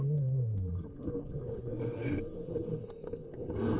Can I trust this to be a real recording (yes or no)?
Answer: no